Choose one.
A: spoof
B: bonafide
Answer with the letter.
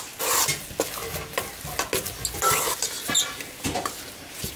B